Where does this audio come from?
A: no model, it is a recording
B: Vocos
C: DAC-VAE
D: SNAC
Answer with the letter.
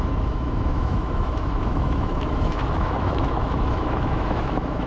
C